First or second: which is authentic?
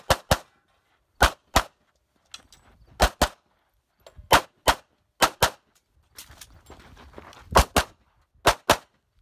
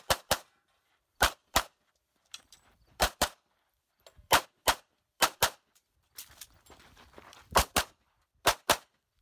first